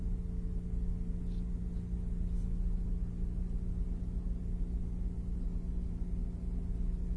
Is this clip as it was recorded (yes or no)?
yes